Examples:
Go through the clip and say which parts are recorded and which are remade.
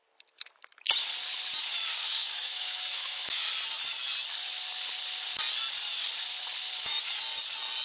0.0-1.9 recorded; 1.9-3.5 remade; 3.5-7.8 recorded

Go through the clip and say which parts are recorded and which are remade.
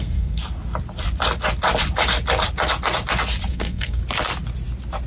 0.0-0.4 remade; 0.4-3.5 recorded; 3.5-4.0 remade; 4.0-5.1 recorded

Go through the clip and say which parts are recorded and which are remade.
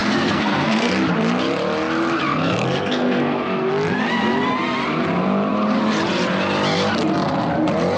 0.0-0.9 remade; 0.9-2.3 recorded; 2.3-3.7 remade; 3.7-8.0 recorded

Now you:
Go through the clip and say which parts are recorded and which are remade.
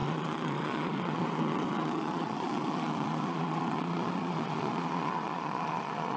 0.0-6.2 remade